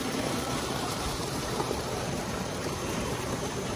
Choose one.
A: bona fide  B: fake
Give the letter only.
B